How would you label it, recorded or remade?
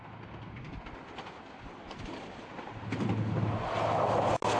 recorded